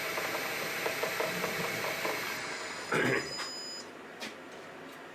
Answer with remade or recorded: recorded